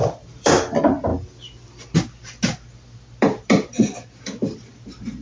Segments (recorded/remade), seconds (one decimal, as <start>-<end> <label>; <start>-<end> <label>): 0.0-0.5 remade; 0.5-5.2 recorded